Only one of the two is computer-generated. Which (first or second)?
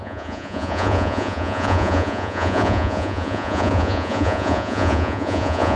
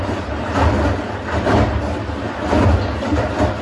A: first